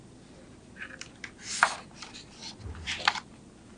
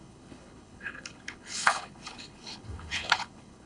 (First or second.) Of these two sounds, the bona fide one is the first